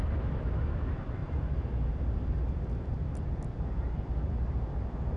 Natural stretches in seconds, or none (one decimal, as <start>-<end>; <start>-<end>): 0.0-5.2